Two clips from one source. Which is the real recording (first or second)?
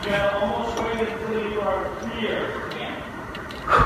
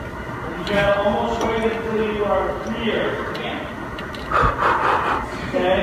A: second